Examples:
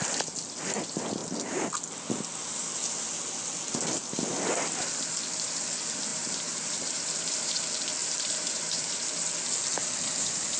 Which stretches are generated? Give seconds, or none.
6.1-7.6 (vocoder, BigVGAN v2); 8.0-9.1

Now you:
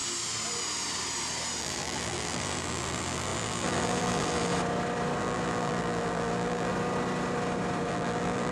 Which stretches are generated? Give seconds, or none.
1.6-4.5 (vocoder, BigVGAN v2); 5.2-6.7; 7.9-8.5

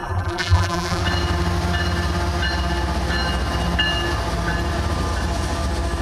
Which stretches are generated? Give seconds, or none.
0.0-1.0 (vocoder, BigVGAN v2)

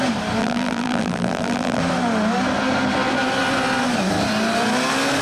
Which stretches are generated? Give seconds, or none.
0.4-1.8 (vocoder, BigVGAN v2)

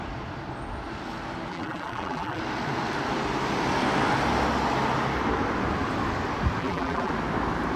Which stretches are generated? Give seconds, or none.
1.5-2.4 (vocoder, BigVGAN v2); 6.6-7.1

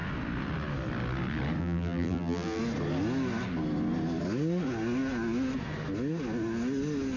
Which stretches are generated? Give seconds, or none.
1.6-2.6 (vocoder, BigVGAN v2)

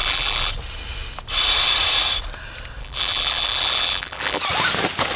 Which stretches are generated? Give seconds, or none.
0.0-0.5 (vocoder, BigVGAN v2); 2.8-4.4